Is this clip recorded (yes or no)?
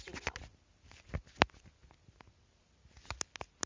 yes